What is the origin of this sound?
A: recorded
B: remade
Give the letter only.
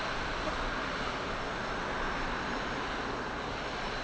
A